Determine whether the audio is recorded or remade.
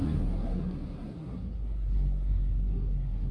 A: remade